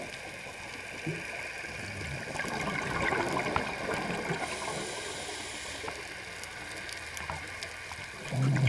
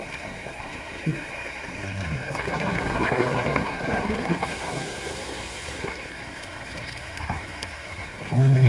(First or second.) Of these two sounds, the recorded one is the first